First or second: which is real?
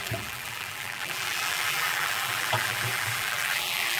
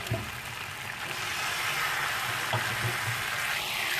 second